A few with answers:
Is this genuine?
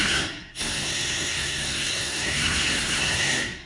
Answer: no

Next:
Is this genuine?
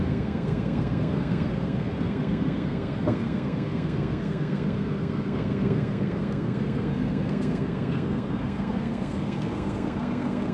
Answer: no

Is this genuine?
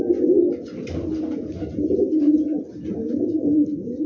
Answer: yes